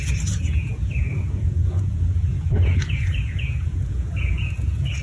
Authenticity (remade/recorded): remade